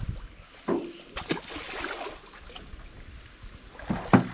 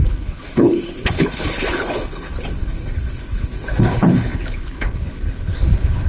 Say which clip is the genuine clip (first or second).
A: first